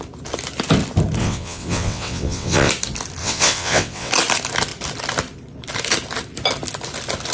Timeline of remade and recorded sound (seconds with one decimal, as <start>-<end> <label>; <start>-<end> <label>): 0.0-1.2 recorded; 1.2-2.7 remade; 2.7-3.2 recorded; 3.2-4.1 remade; 4.1-7.3 recorded